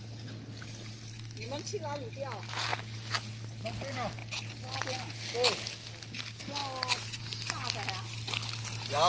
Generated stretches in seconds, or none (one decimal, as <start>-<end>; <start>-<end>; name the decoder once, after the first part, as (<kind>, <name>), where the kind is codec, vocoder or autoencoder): none